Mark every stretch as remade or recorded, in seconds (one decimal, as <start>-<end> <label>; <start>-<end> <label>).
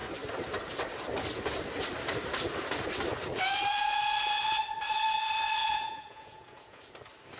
0.0-5.6 recorded; 5.6-6.8 remade; 6.8-7.4 recorded